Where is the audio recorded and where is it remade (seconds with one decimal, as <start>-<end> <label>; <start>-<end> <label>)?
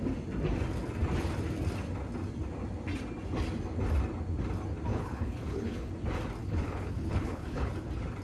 0.0-4.9 recorded; 4.9-5.9 remade; 5.9-6.4 recorded; 6.4-7.7 remade; 7.7-8.2 recorded